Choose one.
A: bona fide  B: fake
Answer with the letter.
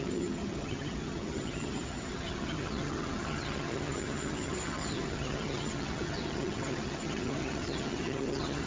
B